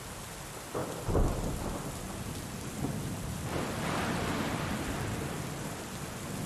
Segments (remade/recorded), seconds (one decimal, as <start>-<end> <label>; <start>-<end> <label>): 0.0-6.5 recorded